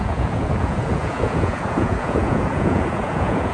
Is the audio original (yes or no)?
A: no